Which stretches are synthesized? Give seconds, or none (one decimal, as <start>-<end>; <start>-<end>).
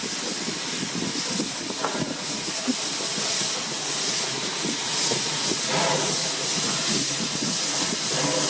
1.9-2.7; 3.1-7.9